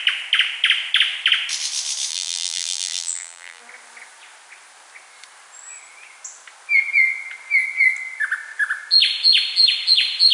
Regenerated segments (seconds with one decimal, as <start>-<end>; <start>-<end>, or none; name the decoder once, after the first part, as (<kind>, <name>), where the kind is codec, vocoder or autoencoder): 2.1-3.6 (vocoder, BigVGAN v2)